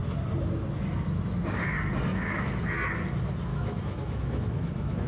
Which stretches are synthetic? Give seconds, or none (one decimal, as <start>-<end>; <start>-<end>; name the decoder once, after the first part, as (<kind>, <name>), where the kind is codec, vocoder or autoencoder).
2.1-2.6 (autoencoder, DAC-VAE); 3.5-5.1

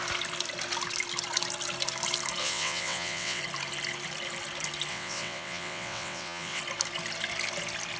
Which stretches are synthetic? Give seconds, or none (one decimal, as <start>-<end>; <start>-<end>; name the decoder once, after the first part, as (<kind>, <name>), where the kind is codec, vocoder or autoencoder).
2.4-3.4 (vocoder, WaveNeXt); 4.9-6.6

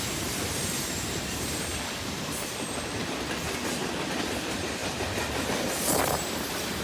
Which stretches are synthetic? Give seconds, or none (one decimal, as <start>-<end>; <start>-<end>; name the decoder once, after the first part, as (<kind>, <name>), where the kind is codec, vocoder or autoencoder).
0.0-1.7 (vocoder, BigVGAN v2); 4.3-4.8; 6.3-6.8

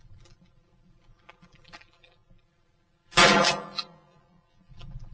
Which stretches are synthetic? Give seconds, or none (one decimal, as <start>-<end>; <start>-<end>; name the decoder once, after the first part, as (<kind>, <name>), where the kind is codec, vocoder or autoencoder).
none

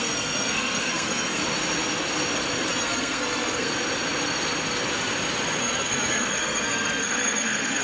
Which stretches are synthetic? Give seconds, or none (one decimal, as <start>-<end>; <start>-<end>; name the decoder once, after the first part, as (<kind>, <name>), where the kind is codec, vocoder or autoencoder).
0.0-1.4 (codec, SNAC); 2.7-3.7; 5.6-7.8